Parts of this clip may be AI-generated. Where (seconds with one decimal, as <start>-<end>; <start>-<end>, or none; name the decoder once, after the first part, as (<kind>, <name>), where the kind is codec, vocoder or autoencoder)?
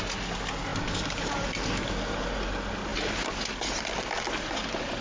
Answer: none